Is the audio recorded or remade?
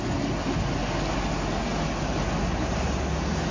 recorded